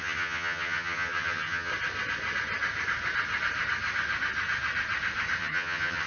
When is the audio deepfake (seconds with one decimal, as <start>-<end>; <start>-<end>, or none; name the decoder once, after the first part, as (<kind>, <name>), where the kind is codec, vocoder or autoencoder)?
0.0-1.7 (vocoder, HiFi-GAN); 5.4-6.1